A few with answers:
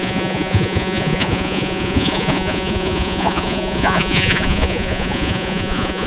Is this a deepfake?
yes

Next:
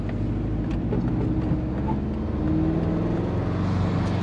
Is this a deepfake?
no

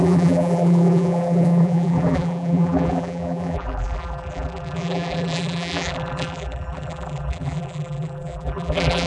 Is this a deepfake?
yes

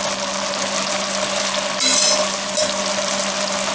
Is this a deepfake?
no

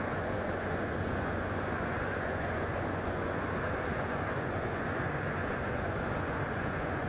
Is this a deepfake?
yes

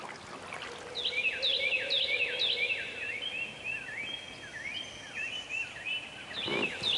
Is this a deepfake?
no